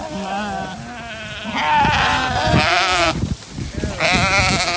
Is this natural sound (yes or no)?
yes